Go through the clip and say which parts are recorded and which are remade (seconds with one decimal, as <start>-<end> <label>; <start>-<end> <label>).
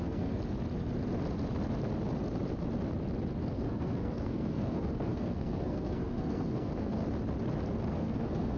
0.0-0.4 remade; 0.4-3.5 recorded; 3.5-7.0 remade; 7.0-7.9 recorded; 7.9-8.6 remade